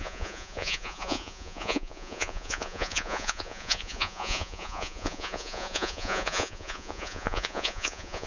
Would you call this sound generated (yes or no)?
yes